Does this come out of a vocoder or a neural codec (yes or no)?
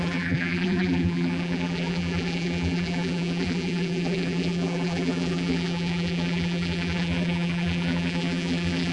yes